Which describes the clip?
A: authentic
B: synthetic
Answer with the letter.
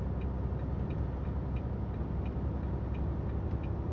A